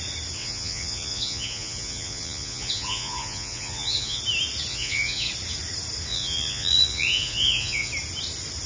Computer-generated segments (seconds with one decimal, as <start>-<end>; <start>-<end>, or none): 0.4-4.2; 4.7-5.3; 6.1-7.9